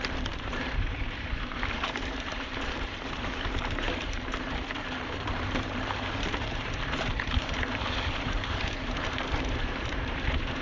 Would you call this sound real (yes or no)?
no